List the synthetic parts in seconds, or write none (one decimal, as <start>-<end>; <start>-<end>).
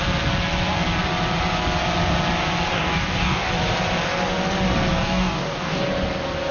2.7-3.5; 4.9-5.8